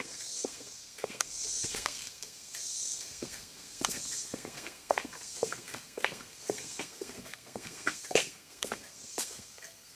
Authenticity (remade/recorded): remade